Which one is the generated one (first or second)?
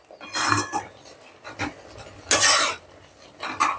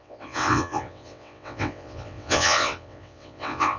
second